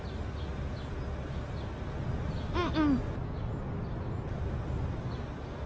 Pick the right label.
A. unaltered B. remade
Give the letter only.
A